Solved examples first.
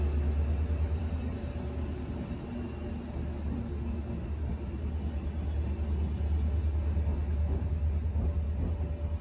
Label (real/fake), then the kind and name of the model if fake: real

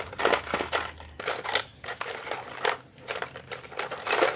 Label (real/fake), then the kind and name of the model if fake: real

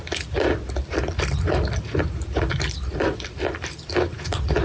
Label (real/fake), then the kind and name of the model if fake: real